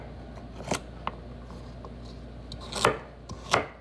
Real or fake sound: real